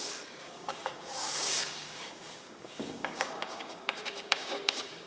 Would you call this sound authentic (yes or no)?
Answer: no